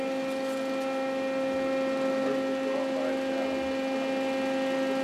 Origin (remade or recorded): recorded